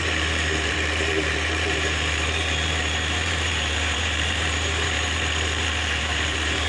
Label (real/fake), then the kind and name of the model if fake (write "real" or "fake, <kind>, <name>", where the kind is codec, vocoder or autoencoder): fake, vocoder, BigVGAN v2